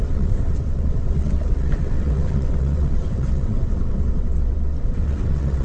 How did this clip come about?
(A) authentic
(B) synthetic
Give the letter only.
B